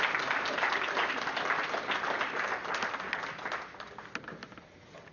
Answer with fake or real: real